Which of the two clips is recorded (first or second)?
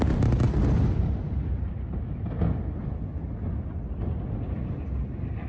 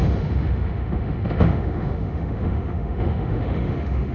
first